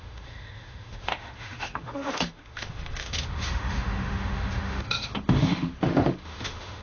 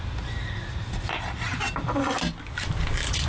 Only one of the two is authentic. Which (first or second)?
second